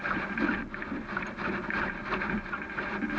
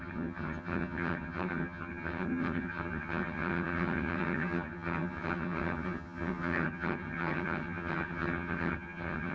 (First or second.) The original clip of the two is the first